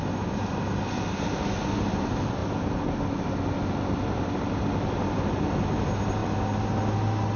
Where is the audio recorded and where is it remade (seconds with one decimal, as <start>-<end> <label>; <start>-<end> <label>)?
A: 0.0-7.4 recorded